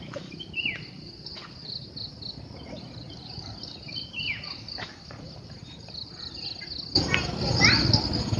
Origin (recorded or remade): recorded